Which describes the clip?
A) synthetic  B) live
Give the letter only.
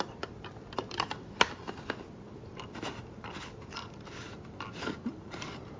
A